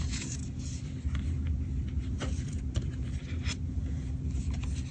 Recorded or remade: recorded